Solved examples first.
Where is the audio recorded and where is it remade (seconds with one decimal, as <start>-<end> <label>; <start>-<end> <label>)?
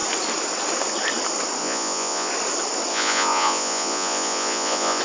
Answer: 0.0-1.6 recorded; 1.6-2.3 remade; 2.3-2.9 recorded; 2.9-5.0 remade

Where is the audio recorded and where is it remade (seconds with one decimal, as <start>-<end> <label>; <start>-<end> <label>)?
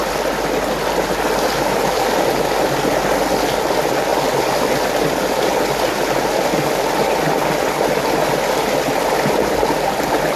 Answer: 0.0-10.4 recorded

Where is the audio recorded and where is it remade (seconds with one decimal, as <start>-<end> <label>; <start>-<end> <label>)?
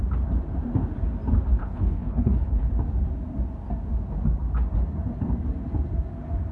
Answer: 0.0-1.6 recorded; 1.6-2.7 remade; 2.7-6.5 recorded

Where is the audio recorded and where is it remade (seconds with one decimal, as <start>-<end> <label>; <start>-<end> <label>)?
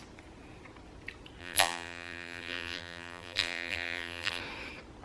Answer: 0.0-1.4 recorded; 1.4-4.4 remade; 4.4-5.0 recorded